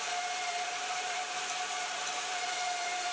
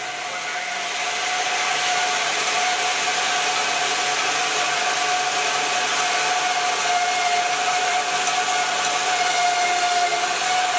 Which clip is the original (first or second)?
second